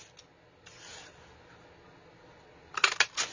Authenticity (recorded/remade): recorded